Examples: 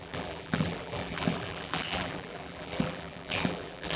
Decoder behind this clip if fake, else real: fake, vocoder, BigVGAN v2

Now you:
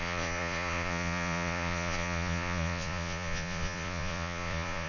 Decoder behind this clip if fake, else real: fake, vocoder, Vocos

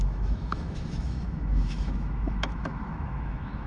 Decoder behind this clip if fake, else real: fake, autoencoder, DAC-VAE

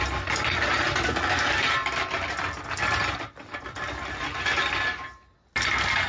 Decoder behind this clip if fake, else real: real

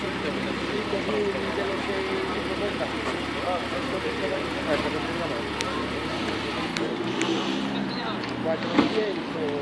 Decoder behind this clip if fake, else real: real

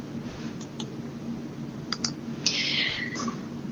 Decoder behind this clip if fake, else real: real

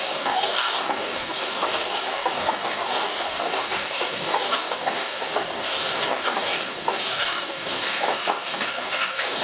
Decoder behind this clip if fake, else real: fake, codec, DAC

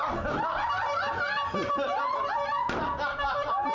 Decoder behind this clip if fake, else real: real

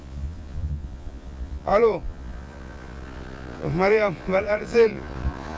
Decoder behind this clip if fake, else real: fake, vocoder, Vocos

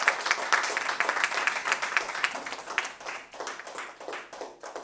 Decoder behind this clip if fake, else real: real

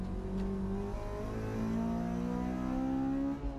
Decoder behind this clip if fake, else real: real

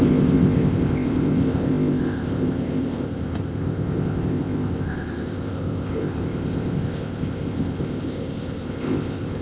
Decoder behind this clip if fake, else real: fake, codec, ZipCodec